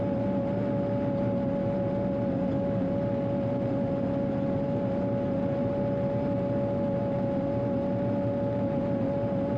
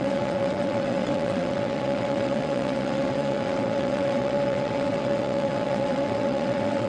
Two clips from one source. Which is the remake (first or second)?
second